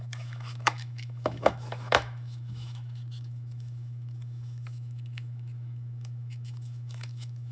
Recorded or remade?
remade